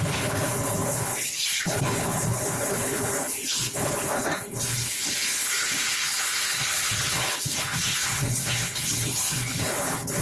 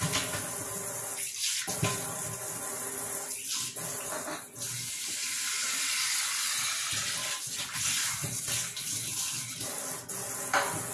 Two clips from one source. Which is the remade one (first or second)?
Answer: first